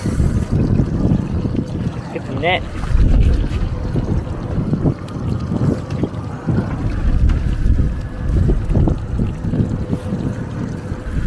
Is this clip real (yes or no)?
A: yes